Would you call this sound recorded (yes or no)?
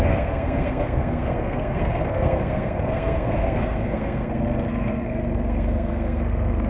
no